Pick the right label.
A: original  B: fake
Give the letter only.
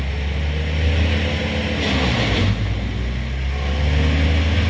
A